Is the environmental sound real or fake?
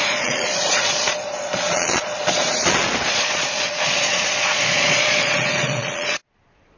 fake